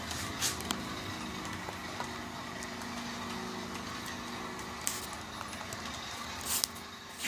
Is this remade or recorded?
recorded